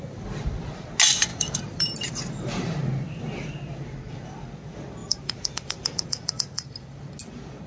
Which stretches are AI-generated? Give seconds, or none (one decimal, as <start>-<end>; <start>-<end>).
1.3-2.8; 5.0-7.1